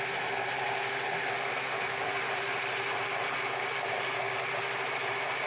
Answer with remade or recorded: recorded